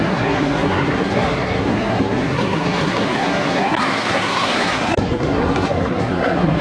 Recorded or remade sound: remade